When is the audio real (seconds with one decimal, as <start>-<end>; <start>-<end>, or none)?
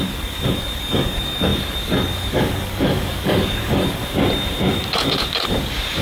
4.0-4.7